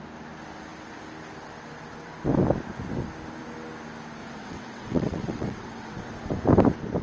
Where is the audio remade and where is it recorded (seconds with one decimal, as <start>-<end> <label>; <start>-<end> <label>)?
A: 0.0-4.2 recorded; 4.2-6.2 remade; 6.2-7.0 recorded